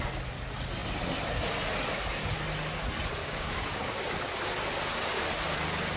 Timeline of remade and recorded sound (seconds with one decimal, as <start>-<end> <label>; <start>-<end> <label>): 0.0-3.2 recorded; 3.2-4.0 remade; 4.0-6.0 recorded